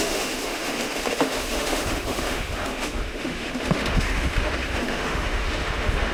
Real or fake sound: fake